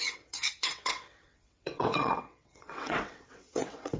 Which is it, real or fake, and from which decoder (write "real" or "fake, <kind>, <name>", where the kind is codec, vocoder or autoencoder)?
fake, vocoder, WaveNeXt